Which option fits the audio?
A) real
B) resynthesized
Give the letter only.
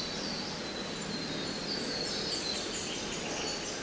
A